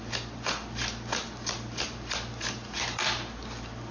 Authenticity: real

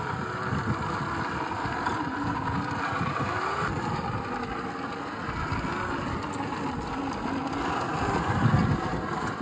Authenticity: real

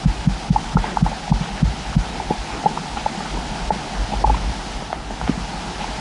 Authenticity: real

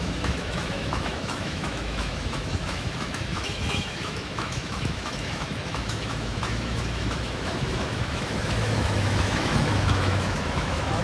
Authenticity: fake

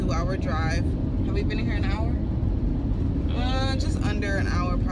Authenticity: real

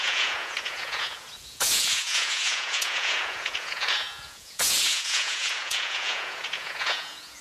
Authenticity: fake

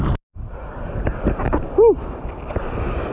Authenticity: real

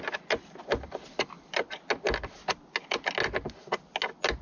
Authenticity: real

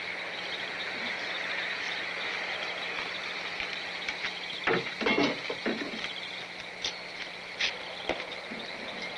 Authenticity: real